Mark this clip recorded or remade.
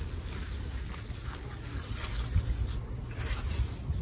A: recorded